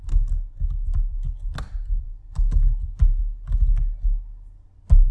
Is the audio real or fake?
real